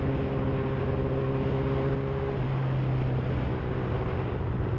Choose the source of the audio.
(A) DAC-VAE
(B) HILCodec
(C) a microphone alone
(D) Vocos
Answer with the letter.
C